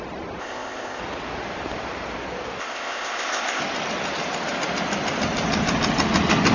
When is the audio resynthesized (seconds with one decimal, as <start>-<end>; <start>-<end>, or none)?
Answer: 0.4-1.0; 2.6-3.6